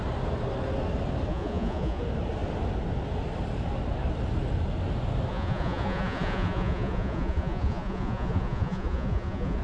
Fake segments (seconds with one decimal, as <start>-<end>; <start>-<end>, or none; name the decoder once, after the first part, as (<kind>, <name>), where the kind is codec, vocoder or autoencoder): 1.3-2.0 (vocoder, Vocos); 5.3-9.6